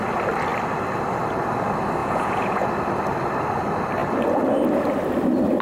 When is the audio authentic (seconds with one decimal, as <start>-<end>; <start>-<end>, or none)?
0.0-2.0; 2.7-5.6